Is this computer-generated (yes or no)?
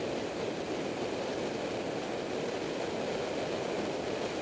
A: no